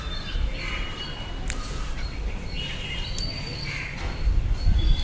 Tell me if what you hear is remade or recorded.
recorded